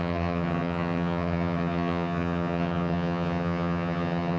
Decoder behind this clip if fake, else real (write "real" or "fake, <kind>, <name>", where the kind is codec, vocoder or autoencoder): fake, vocoder, HiFi-GAN